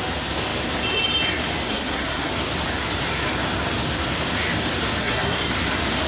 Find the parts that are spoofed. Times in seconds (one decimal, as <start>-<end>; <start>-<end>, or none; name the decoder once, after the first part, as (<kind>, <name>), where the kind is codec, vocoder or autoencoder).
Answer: 1.7-2.3 (codec, SNAC); 5.0-5.5